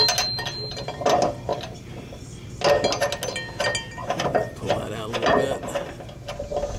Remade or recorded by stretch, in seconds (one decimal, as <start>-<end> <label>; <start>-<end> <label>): 0.0-1.5 recorded; 1.5-2.2 remade; 2.2-4.0 recorded; 4.0-5.0 remade; 5.0-6.8 recorded